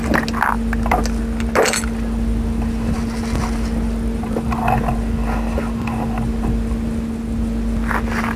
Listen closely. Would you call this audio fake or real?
real